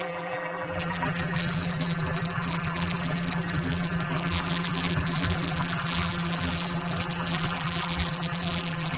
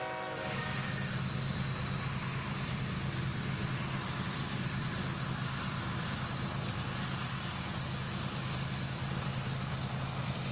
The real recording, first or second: second